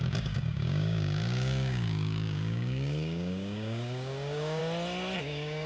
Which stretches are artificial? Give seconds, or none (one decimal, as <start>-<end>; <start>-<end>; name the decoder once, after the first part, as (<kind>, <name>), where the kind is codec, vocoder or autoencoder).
0.0-4.6 (codec, DAC); 5.2-5.7